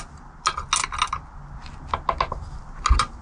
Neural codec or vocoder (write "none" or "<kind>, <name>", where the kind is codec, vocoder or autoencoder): none